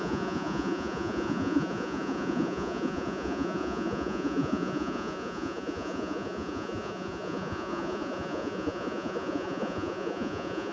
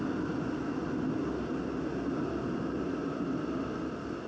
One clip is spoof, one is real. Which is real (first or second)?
second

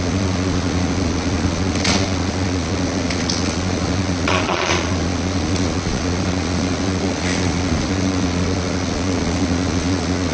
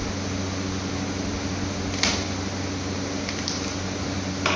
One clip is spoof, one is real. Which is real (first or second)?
second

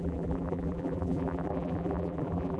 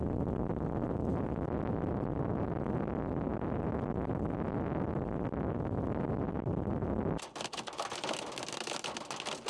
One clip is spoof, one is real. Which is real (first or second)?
second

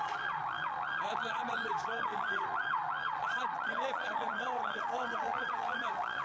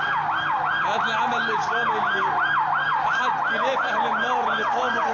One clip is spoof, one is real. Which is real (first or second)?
second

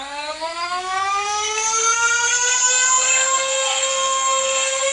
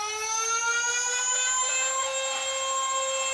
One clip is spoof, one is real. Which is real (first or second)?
second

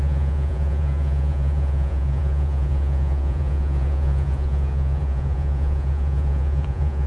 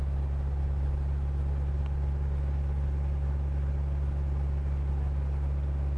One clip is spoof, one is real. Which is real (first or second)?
second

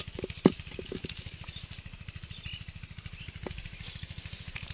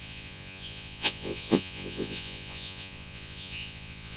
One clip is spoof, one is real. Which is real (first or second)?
first